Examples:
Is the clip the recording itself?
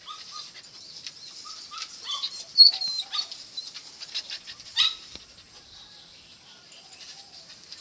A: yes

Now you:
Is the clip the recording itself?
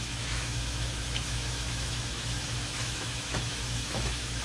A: no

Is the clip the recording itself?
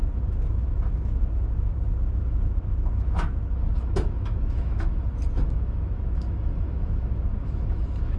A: no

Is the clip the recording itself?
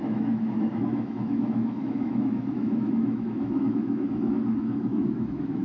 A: no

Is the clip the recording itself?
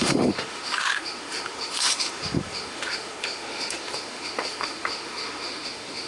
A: no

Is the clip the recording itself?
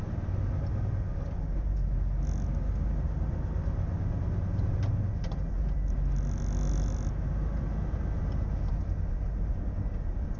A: yes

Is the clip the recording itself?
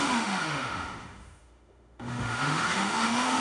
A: no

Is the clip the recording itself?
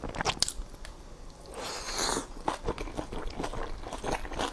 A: yes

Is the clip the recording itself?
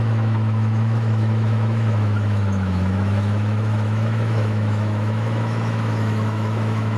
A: no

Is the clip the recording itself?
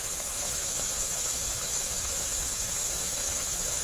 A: no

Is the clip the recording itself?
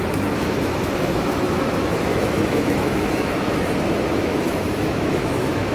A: no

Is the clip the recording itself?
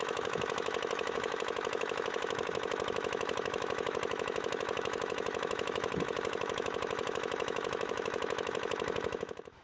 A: no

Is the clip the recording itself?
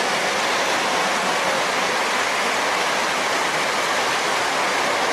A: yes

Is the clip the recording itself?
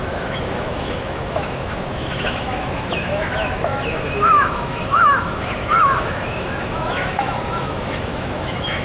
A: no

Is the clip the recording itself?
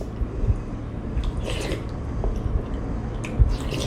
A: yes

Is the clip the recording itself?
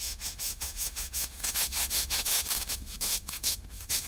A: no